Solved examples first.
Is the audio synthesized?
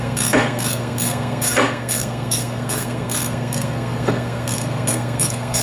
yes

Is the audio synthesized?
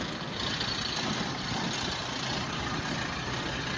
no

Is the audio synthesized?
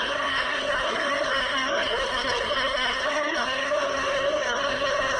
yes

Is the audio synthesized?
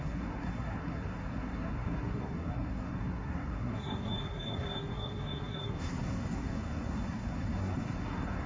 yes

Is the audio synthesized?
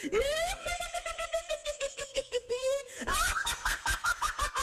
yes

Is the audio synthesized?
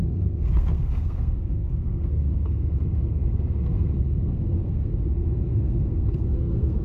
yes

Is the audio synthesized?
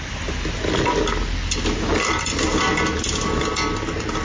no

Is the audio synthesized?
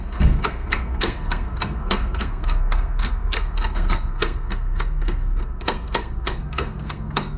yes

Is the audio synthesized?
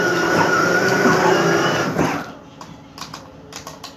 no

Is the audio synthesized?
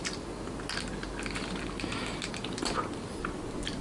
no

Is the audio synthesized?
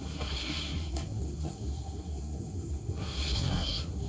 yes